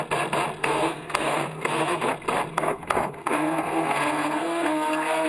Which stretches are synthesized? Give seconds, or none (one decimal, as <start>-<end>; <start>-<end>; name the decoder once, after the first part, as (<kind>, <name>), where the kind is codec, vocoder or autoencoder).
0.6-2.1 (codec, SNAC); 2.5-5.3